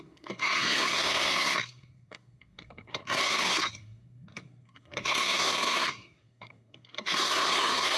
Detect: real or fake fake